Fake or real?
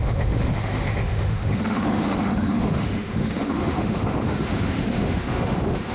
fake